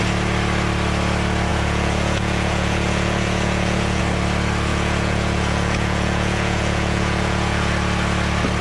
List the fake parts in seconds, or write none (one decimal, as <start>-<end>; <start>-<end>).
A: 1.5-4.0; 4.7-7.7

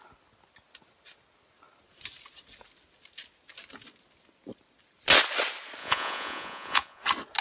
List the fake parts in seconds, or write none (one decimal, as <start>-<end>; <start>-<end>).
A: 5.8-7.0

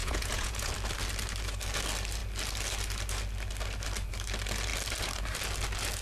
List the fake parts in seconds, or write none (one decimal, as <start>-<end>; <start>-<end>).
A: 0.0-0.7

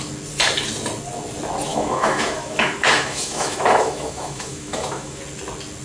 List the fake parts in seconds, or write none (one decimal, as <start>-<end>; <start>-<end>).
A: 1.7-5.2

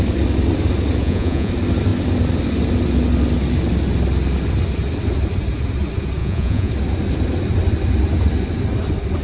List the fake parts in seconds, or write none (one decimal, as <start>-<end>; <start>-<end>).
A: 1.0-1.5; 6.2-6.7

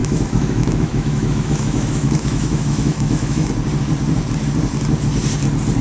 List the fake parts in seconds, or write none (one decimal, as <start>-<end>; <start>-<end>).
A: 0.0-3.5